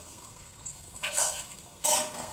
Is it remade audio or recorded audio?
remade